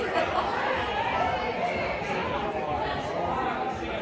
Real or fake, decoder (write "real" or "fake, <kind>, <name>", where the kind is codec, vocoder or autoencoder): real